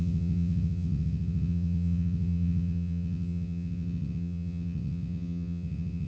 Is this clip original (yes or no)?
no